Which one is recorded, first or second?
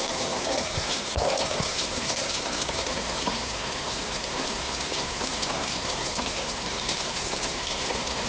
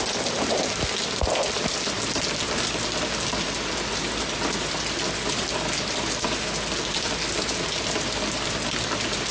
second